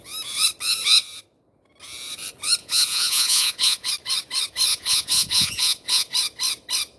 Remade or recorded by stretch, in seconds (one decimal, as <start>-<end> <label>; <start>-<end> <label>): 0.0-2.6 recorded; 2.6-3.9 remade; 3.9-4.7 recorded; 4.7-6.1 remade; 6.1-7.0 recorded